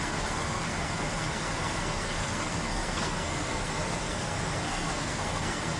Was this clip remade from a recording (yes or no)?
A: yes